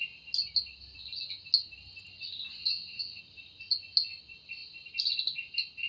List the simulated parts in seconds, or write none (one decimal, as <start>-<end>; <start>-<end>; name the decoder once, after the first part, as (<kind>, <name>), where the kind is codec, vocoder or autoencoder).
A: 2.5-3.2 (vocoder, WaveNeXt)